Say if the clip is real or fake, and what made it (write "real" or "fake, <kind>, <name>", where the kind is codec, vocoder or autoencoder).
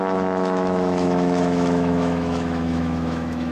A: fake, autoencoder, DAC-VAE